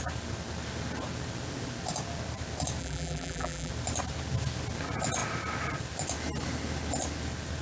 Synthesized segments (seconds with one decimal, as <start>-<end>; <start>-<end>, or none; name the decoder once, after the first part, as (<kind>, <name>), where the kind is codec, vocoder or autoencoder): 2.8-3.7 (vocoder, BigVGAN v2)